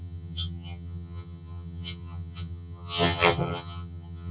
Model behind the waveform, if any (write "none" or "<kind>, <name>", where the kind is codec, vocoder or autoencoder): vocoder, HiFi-GAN